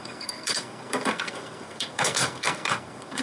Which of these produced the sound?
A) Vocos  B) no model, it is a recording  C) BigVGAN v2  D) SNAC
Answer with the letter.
D